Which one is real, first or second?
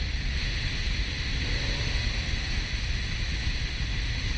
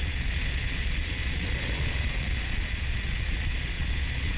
first